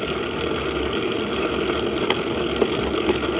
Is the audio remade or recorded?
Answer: recorded